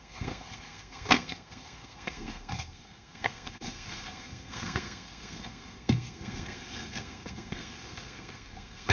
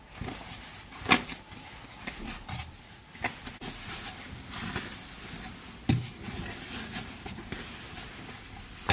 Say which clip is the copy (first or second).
first